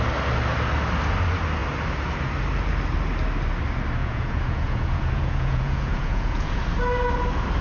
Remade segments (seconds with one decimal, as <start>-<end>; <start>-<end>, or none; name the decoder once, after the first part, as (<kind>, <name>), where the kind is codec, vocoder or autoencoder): 4.0-6.6 (vocoder, Vocos)